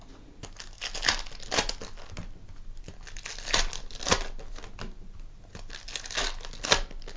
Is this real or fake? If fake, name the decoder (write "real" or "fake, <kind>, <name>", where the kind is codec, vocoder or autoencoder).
real